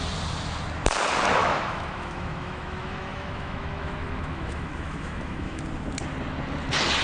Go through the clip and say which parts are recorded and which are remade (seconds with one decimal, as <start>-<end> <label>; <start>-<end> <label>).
0.0-1.4 recorded; 1.4-5.6 remade; 5.6-7.0 recorded